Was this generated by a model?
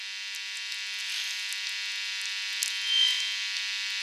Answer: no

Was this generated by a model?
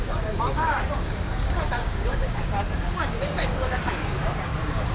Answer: yes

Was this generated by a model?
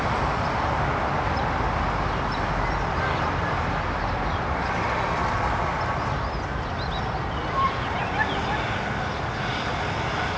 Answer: no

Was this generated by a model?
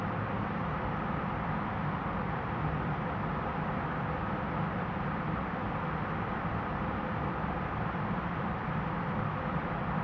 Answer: yes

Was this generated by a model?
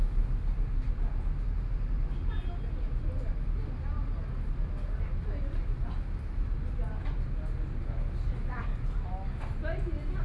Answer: no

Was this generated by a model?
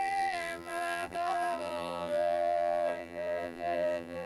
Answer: yes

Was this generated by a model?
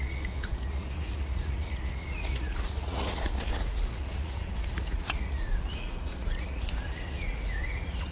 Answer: yes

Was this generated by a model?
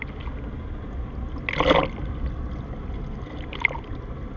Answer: no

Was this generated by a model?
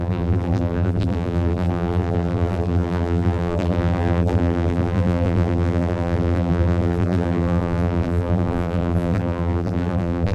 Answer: yes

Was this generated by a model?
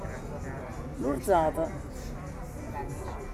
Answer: no